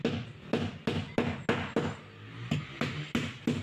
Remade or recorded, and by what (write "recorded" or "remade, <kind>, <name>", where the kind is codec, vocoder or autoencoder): recorded